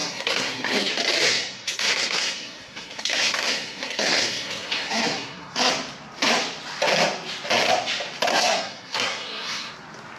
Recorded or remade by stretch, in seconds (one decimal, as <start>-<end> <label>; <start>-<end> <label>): 0.0-0.9 remade; 0.9-1.3 recorded; 1.3-5.7 remade; 5.7-8.3 recorded; 8.3-9.7 remade; 9.7-10.2 recorded